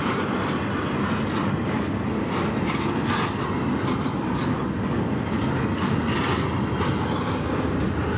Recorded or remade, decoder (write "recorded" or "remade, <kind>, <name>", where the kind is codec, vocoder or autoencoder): recorded